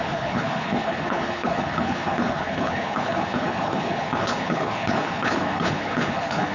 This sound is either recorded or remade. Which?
remade